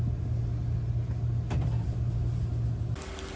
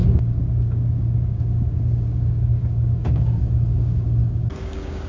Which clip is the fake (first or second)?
second